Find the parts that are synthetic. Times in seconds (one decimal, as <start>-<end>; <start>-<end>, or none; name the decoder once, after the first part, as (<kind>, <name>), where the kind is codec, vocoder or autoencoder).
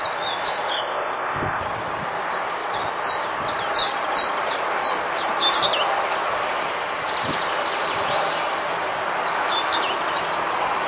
0.7-1.6 (codec, ZipCodec)